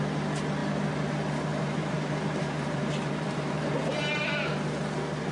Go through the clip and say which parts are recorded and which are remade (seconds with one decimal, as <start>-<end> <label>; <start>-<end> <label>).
0.0-1.5 recorded; 1.5-4.2 remade; 4.2-5.3 recorded

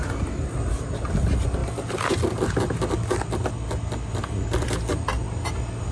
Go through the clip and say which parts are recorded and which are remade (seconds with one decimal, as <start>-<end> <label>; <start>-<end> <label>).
0.0-5.9 recorded